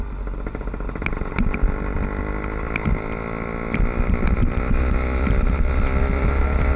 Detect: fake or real real